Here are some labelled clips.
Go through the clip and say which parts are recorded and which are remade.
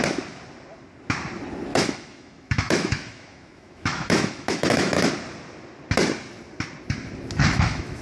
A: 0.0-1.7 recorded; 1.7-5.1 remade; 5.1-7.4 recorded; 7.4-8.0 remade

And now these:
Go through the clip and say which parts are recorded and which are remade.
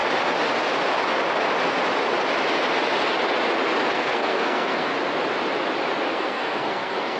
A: 0.0-3.9 recorded; 3.9-4.9 remade; 4.9-6.1 recorded; 6.1-7.2 remade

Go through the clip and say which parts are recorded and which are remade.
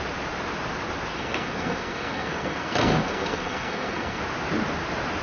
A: 0.0-1.1 recorded; 1.1-4.2 remade; 4.2-5.2 recorded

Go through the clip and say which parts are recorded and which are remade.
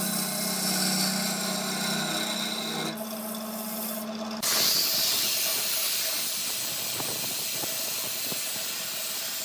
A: 0.0-9.4 recorded